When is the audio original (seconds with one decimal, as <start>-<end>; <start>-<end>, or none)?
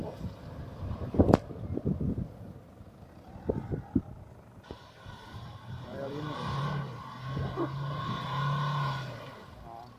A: 0.0-10.0